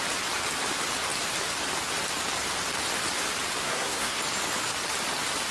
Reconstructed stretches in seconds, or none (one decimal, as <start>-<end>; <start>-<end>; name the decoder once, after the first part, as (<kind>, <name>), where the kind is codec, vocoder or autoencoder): 3.6-4.2 (codec, SNAC)